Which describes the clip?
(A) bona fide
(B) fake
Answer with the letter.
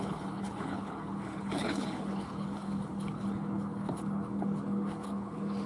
B